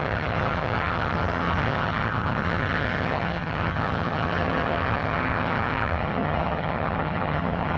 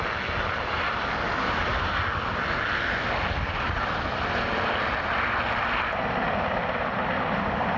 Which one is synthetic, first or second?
first